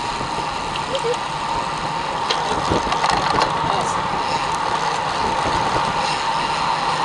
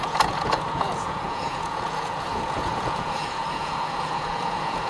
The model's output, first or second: second